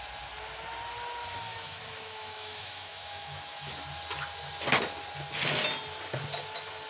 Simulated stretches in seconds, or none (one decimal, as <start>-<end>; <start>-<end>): 1.5-3.7